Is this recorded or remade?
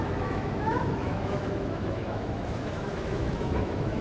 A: remade